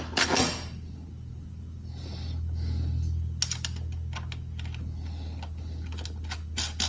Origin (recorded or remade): recorded